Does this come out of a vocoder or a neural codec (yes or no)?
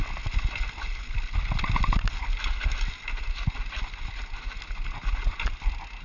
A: no